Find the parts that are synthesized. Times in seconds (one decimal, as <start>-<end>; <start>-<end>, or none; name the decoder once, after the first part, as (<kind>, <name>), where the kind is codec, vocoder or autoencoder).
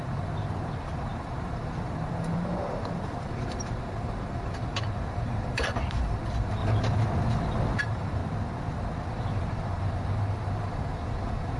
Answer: 0.0-6.6 (vocoder, BigVGAN v2); 7.8-8.2; 9.1-11.6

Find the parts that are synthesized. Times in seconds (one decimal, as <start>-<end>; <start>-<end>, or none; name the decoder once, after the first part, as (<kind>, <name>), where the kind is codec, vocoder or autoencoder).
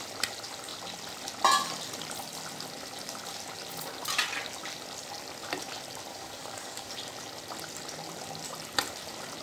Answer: 6.1-6.9 (codec, DAC)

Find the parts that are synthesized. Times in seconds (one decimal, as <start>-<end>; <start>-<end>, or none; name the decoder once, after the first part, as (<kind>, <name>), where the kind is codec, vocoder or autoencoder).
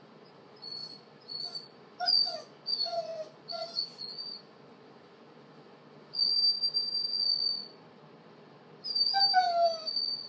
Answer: 0.0-6.3 (vocoder, Vocos); 7.1-7.6; 9.8-10.3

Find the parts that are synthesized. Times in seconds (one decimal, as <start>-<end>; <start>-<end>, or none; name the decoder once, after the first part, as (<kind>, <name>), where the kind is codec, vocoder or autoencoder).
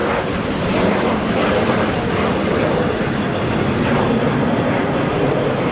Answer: 0.0-3.4 (vocoder, BigVGAN v2)